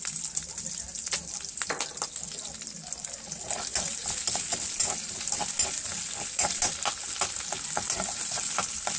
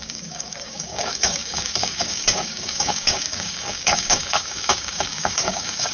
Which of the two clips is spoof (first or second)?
second